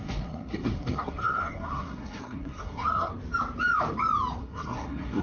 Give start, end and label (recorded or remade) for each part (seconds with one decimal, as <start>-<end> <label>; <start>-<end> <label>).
0.0-3.1 remade; 3.1-4.4 recorded; 4.4-5.2 remade